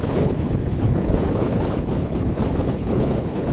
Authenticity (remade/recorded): remade